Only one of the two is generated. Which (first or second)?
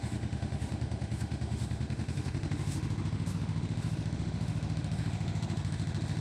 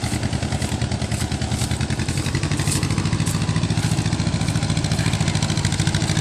first